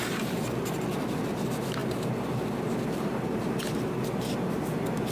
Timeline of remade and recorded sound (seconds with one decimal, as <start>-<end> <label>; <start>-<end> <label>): 0.0-5.1 recorded